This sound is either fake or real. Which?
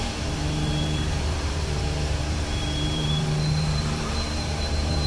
fake